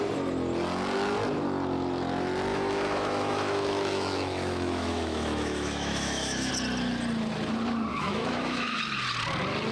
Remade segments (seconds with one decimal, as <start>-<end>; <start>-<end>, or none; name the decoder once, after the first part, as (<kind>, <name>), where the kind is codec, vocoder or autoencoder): 2.5-6.5 (autoencoder, DAC-VAE); 7.9-8.8